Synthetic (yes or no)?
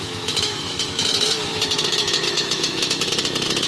yes